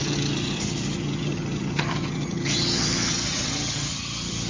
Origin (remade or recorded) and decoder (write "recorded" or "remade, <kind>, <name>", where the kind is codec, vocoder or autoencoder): remade, vocoder, HiFi-GAN